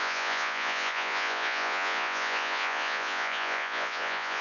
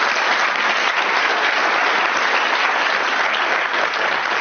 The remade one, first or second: first